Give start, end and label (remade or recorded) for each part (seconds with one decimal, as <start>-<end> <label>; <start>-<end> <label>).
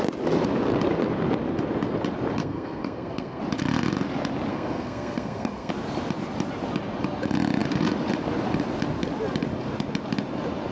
0.0-2.4 recorded; 2.4-3.4 remade; 3.4-4.5 recorded; 4.5-5.7 remade; 5.7-10.7 recorded